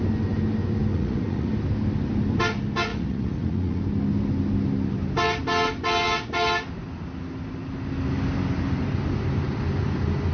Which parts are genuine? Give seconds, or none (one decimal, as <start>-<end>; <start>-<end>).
0.0-0.9; 1.5-2.9; 3.8-10.3